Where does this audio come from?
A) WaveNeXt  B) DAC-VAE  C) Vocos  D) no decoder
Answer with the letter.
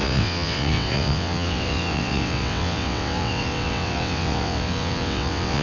A